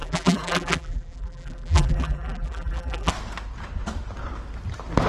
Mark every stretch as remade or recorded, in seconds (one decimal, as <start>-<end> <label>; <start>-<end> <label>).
0.0-3.1 remade; 3.1-5.1 recorded